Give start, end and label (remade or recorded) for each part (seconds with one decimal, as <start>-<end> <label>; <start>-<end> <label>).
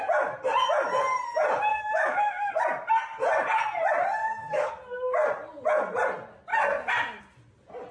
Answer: 0.0-1.7 recorded; 1.7-2.5 remade; 2.5-4.2 recorded; 4.2-4.7 remade; 4.7-7.9 recorded